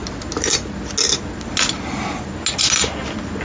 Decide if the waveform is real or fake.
real